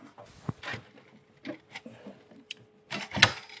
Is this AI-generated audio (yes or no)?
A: no